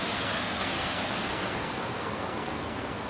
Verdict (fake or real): fake